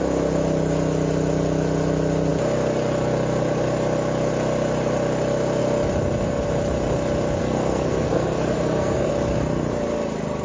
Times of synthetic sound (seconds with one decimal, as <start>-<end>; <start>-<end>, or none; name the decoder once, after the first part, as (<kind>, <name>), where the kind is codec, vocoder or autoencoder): 7.4-9.1 (codec, SNAC)

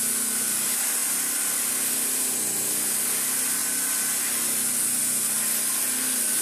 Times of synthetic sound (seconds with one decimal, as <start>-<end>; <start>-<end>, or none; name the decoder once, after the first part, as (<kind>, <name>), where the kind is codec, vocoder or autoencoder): none

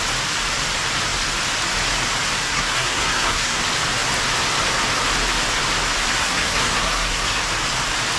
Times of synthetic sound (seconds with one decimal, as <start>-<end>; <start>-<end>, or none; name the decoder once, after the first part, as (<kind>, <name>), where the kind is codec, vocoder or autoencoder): 2.4-3.6 (codec, SNAC); 6.1-7.4

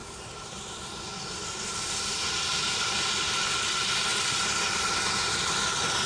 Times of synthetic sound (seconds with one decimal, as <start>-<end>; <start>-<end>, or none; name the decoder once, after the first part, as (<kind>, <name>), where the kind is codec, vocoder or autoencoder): 0.0-0.7 (vocoder, BigVGAN v2); 1.1-2.6

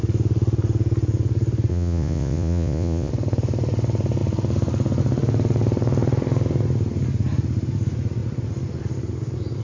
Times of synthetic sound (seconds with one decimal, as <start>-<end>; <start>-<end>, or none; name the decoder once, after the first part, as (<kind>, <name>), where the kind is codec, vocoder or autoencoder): 1.7-3.1 (vocoder, Vocos)